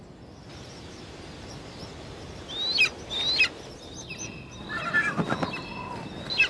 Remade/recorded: recorded